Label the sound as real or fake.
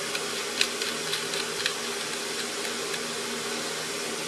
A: real